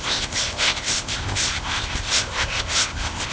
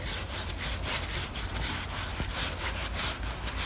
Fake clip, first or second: first